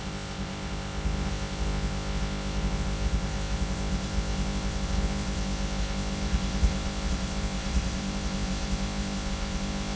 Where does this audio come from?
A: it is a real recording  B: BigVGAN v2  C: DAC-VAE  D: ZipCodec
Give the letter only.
D